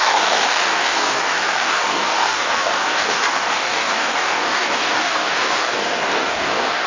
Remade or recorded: remade